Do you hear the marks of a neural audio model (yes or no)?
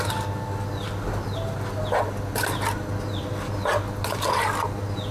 no